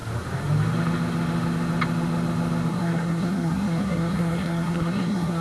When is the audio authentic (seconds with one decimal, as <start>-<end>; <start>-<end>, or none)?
0.0-2.7